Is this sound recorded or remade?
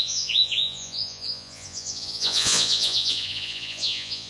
remade